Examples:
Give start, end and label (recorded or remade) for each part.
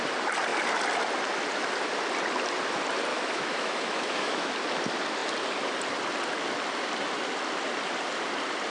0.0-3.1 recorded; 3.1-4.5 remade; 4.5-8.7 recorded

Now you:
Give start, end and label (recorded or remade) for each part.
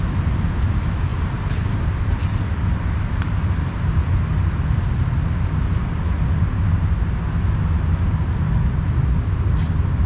0.0-1.1 recorded; 1.1-1.8 remade; 1.8-10.1 recorded